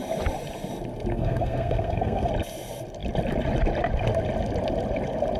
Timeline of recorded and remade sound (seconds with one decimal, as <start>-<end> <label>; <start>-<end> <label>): 0.0-1.1 recorded; 1.1-2.3 remade; 2.3-5.4 recorded